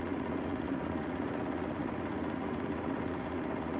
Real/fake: fake